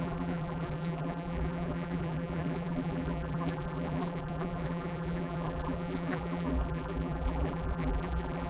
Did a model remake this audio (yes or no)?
yes